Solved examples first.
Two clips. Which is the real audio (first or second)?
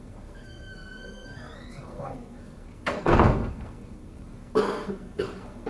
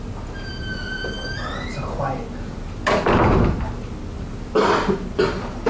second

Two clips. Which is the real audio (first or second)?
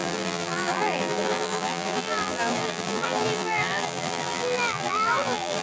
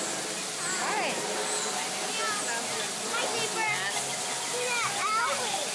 second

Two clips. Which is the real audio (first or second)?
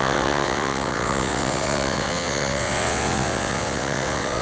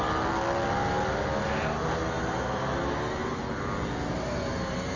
second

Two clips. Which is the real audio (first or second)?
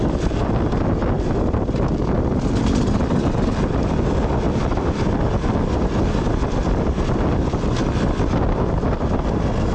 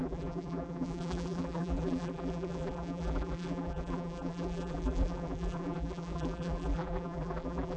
first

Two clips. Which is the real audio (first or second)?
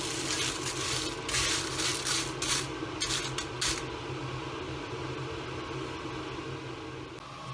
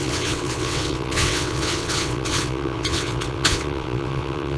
first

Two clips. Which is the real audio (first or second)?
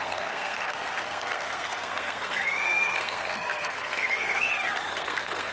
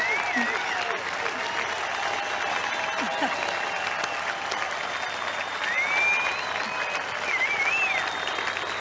second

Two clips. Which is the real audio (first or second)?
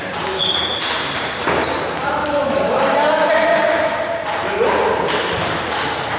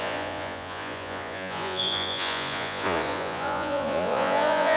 first